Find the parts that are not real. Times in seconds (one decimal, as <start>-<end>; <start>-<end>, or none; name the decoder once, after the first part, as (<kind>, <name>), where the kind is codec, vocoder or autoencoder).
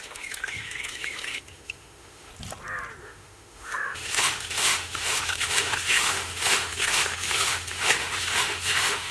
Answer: 0.0-2.3 (autoencoder, DAC-VAE); 3.0-9.1